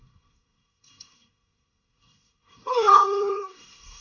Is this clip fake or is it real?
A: fake